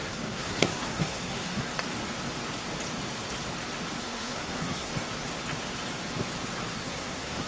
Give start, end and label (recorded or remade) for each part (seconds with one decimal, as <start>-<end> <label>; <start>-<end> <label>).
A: 0.0-1.7 remade; 1.7-4.0 recorded; 4.0-4.9 remade; 4.9-6.7 recorded; 6.7-7.5 remade